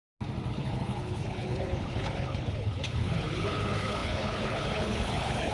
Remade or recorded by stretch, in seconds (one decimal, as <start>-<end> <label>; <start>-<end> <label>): 0.0-0.5 recorded; 0.5-5.5 remade